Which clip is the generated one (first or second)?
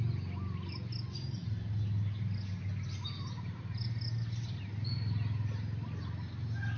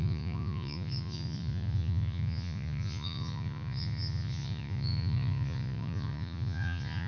second